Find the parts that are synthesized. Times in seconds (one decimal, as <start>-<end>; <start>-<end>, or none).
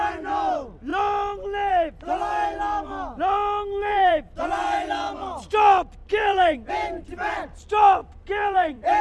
3.9-4.9; 6.0-6.7; 8.0-9.0